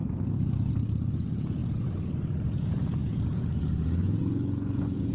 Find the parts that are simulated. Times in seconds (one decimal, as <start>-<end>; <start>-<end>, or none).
0.0-1.6; 2.5-5.1